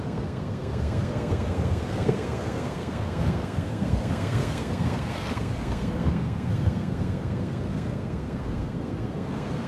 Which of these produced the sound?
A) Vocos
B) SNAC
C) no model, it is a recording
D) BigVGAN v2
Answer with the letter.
B